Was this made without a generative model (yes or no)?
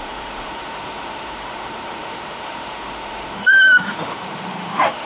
no